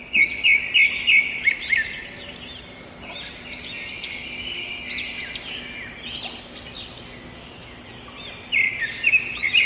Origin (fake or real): real